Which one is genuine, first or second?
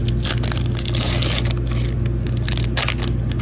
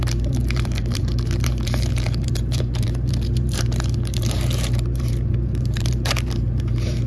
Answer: first